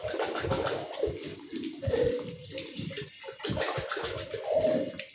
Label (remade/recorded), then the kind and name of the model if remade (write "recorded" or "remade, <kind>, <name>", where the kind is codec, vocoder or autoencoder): recorded